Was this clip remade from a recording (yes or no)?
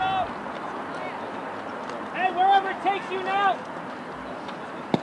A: no